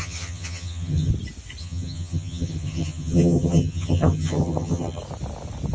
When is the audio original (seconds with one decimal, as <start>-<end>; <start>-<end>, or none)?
1.1-1.6; 5.0-5.7

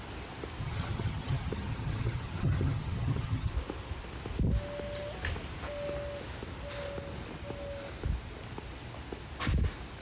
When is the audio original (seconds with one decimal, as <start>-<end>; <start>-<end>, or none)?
0.0-0.6; 3.5-10.0